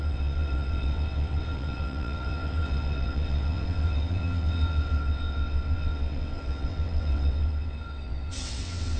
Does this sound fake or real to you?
fake